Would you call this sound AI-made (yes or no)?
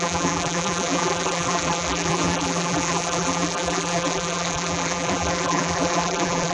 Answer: yes